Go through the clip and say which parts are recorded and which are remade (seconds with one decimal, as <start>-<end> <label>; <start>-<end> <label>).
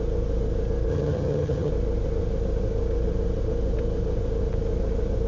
0.0-0.9 recorded; 0.9-1.7 remade; 1.7-5.3 recorded